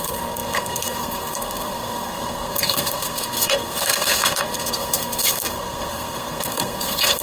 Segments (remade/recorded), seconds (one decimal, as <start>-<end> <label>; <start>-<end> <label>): 0.0-7.2 remade